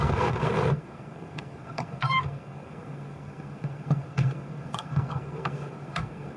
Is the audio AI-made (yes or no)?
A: yes